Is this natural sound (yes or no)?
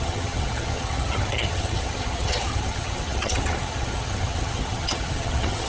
no